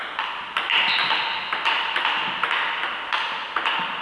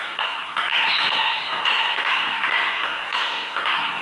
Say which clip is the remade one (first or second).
second